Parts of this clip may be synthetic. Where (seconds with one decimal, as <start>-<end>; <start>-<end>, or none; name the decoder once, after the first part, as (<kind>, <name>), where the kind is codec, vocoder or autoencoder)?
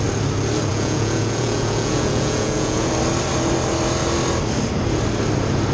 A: 0.7-2.9 (vocoder, Vocos)